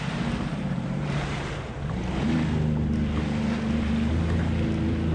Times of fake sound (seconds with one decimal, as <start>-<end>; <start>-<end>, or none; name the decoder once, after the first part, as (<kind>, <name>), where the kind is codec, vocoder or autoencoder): 0.0-2.0 (vocoder, BigVGAN v2)